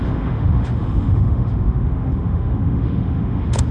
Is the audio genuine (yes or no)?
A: no